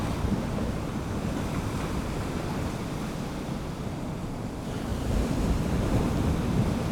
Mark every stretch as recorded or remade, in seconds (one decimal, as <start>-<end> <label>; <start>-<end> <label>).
0.0-6.9 remade